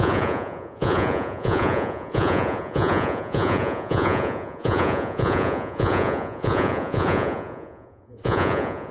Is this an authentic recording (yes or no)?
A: no